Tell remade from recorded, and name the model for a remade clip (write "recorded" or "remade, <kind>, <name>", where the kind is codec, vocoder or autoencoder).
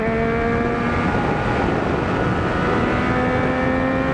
recorded